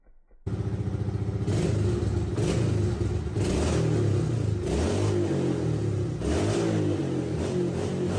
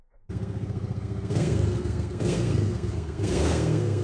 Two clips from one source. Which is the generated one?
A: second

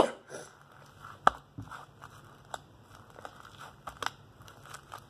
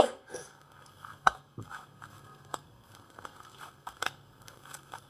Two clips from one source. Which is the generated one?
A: second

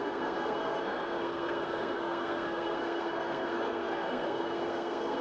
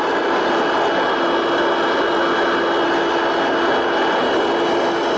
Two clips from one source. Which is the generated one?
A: first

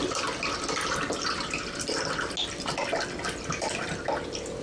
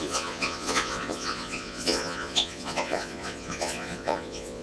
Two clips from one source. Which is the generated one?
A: second